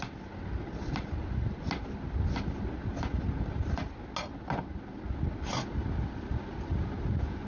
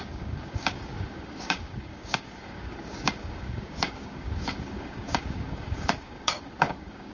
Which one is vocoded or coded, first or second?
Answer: second